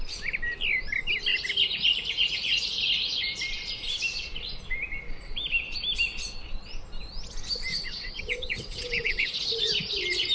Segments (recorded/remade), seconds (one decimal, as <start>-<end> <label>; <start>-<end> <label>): 0.0-7.7 recorded; 7.7-9.4 remade; 9.4-10.3 recorded